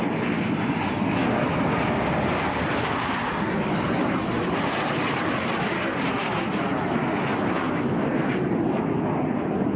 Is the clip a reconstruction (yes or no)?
no